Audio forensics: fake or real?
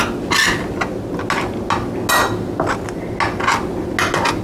real